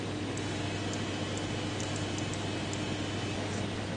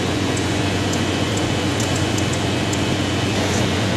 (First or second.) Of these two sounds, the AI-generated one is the second